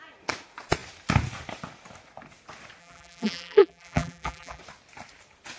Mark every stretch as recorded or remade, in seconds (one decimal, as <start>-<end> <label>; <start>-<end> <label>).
0.0-2.8 recorded; 2.8-4.6 remade; 4.6-5.6 recorded